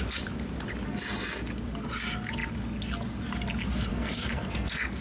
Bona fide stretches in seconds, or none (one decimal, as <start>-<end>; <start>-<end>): 0.0-3.9